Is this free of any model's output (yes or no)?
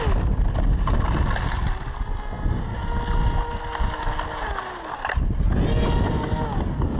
yes